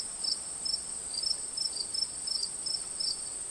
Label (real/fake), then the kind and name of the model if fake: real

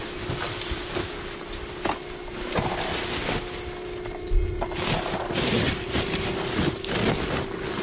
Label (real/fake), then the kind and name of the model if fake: real